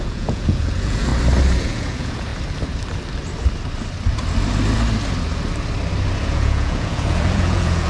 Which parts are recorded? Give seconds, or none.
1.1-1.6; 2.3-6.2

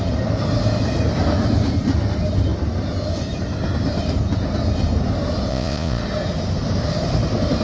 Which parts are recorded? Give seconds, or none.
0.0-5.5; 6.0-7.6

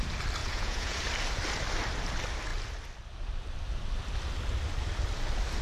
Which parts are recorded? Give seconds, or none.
0.0-0.4; 1.0-5.6

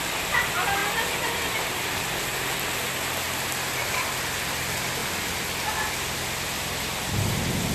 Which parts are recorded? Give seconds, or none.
0.0-7.7

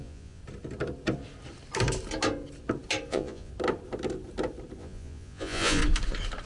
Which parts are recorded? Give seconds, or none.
0.4-3.1; 3.5-4.8; 5.8-6.5

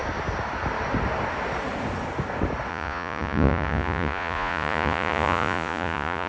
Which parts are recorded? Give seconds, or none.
0.0-2.7

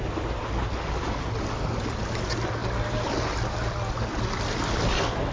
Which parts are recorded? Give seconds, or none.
0.0-5.3

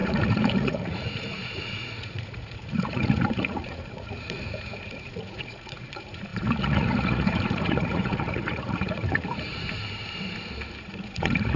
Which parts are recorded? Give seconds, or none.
9.6-10.8